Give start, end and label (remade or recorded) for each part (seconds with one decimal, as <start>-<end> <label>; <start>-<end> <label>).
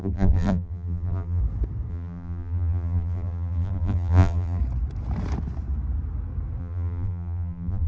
0.0-1.4 remade; 1.4-1.9 recorded; 1.9-4.6 remade; 4.6-6.6 recorded; 6.6-7.9 remade